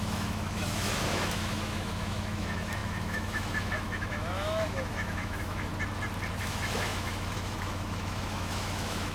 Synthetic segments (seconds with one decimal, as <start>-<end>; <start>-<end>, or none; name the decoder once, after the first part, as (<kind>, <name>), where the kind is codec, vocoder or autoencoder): 0.0-5.7 (autoencoder, DAC-VAE); 6.4-9.1